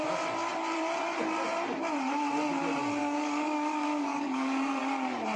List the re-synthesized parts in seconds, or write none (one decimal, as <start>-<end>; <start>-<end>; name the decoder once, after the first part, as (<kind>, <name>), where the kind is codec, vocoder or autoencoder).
3.0-4.8 (codec, DAC)